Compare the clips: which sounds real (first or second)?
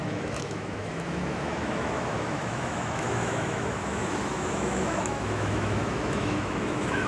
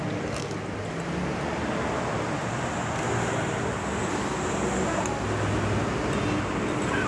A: second